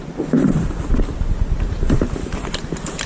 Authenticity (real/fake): real